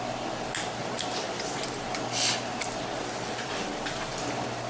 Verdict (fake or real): real